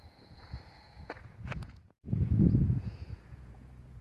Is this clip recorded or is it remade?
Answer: remade